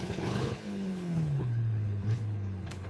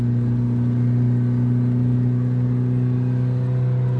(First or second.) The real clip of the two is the second